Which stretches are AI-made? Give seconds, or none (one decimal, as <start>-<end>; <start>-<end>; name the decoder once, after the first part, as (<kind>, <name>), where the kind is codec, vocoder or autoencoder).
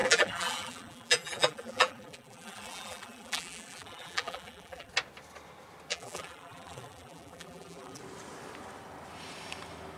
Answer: 0.0-4.9 (vocoder, BigVGAN v2); 5.9-8.0